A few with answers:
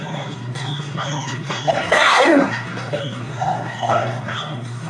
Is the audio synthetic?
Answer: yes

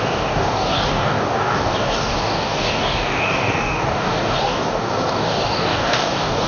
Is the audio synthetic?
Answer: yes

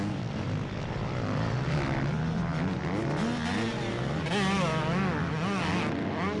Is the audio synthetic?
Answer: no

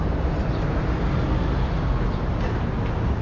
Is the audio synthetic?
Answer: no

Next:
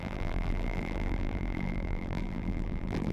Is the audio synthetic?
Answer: yes